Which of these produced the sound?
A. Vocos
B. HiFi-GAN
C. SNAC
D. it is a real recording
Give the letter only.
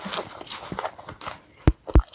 D